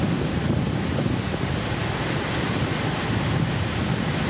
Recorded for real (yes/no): yes